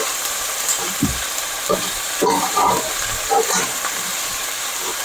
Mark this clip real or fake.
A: fake